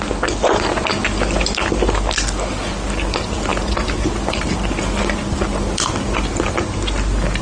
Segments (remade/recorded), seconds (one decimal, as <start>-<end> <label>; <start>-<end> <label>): 0.0-7.4 recorded

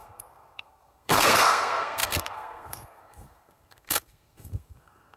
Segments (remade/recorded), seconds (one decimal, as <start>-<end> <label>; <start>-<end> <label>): 0.0-5.2 remade

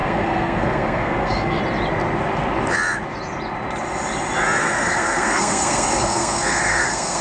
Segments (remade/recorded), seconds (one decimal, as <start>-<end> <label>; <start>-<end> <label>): 0.0-1.6 remade; 1.6-4.6 recorded; 4.6-7.2 remade

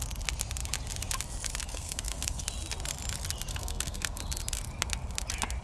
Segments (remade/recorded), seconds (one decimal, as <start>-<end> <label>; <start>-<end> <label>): 0.0-1.6 recorded; 1.6-2.4 remade; 2.4-3.5 recorded; 3.5-4.2 remade; 4.2-5.6 recorded

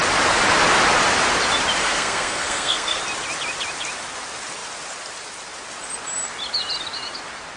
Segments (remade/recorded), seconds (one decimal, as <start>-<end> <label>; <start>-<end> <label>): 0.0-1.8 recorded; 1.8-3.0 remade; 3.0-7.6 recorded

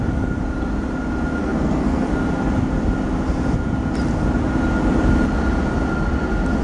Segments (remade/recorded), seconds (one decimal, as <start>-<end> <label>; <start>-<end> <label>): 0.0-1.4 recorded; 1.4-2.1 remade; 2.1-6.6 recorded

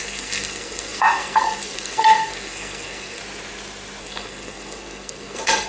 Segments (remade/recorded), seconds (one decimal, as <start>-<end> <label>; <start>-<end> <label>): 0.0-3.2 remade; 3.2-4.0 recorded; 4.0-5.7 remade

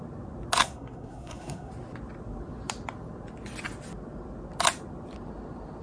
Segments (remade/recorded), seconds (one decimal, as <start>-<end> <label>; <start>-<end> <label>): 0.0-0.6 recorded; 0.6-1.7 remade; 1.7-5.8 recorded